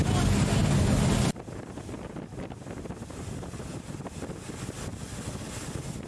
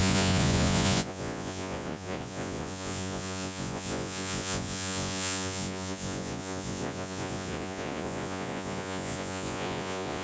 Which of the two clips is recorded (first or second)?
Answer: first